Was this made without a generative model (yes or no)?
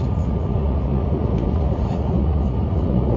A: no